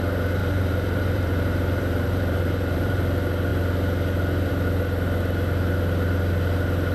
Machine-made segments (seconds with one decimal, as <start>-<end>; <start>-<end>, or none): 0.4-3.0